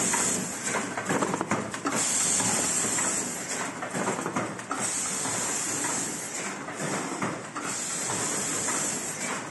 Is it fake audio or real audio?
real